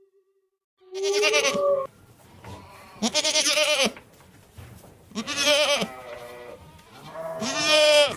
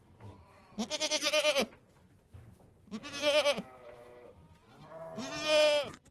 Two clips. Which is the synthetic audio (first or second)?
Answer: first